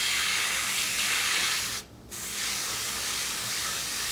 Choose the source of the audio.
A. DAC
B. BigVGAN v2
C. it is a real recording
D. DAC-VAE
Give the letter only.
A